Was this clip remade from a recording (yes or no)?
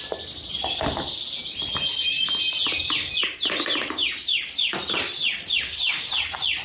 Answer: no